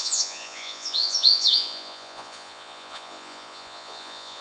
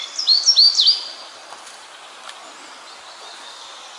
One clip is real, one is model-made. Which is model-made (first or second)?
first